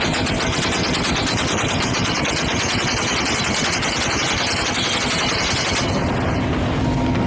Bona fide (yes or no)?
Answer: yes